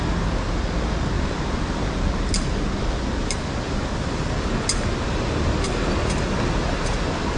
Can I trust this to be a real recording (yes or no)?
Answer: yes